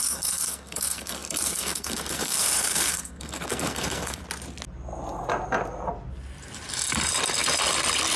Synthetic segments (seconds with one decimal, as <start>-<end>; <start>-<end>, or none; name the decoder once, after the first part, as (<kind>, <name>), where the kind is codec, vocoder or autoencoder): 0.0-4.2 (codec, SNAC)